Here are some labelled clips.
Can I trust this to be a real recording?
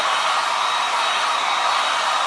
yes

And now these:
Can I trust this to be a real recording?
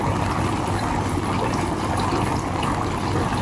yes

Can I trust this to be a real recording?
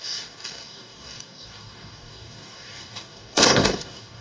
no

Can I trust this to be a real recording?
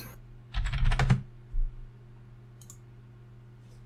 yes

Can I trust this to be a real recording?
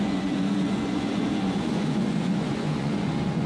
no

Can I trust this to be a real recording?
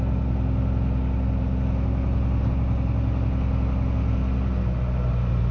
yes